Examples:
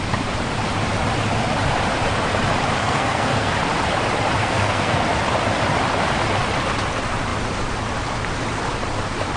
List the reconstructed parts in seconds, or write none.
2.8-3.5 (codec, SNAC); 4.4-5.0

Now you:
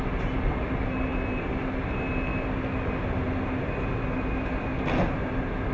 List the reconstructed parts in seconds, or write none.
none

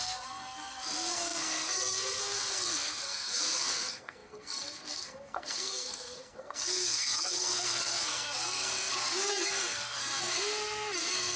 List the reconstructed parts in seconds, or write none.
0.0-11.4 (codec, SNAC)

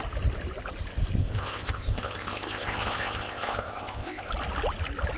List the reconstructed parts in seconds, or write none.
1.2-4.3 (codec, ZipCodec)